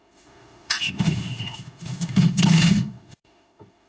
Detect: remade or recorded remade